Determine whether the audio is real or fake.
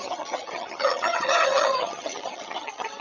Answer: fake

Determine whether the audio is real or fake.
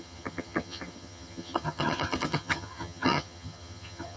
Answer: fake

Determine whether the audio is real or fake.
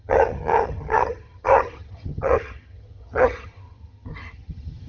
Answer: fake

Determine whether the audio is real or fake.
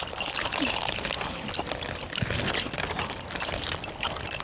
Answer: real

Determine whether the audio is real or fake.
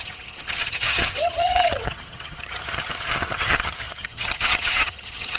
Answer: fake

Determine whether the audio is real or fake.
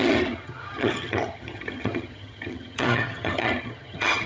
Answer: fake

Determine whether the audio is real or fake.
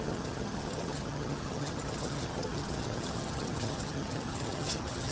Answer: fake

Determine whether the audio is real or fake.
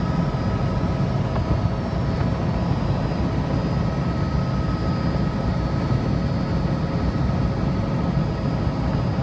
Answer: real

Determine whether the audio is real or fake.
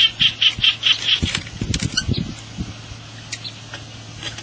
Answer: real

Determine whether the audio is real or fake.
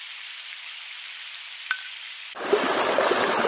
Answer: real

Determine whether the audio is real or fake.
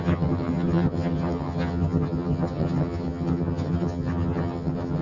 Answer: fake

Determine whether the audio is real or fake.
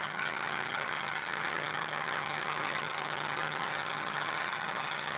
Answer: fake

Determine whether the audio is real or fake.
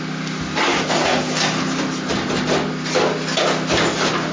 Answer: real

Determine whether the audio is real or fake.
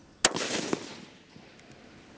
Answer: real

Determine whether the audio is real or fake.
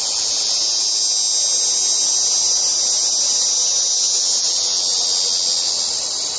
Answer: real